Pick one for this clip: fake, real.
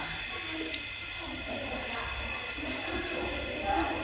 real